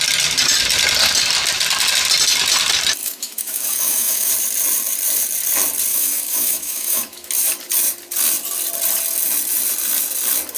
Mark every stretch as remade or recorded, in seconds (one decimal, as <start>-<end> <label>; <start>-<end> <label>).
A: 0.0-3.0 recorded; 3.0-4.3 remade; 4.3-5.9 recorded; 5.9-7.3 remade; 7.3-10.6 recorded